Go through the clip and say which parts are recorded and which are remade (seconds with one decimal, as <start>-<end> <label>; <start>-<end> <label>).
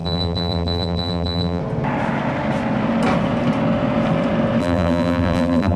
0.0-1.6 remade; 1.6-4.6 recorded; 4.6-5.8 remade